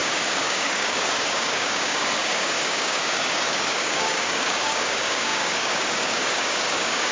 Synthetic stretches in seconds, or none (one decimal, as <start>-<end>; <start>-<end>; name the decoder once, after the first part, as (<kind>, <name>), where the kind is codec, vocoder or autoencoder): 0.0-7.1 (codec, DAC)